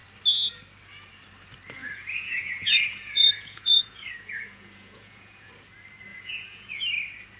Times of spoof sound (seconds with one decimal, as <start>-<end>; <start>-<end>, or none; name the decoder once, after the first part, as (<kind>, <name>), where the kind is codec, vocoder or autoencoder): 1.8-5.5 (vocoder, Vocos); 6.1-6.8